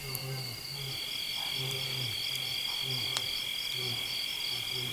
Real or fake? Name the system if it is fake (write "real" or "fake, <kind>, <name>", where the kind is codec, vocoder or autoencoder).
real